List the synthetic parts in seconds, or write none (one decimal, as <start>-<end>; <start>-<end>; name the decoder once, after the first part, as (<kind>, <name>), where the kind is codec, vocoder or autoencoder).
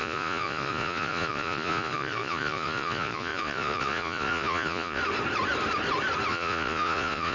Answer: 0.0-5.0 (vocoder, Vocos); 6.3-7.3